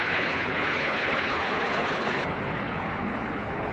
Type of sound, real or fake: fake